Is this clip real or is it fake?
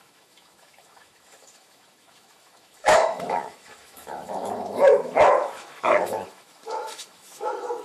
fake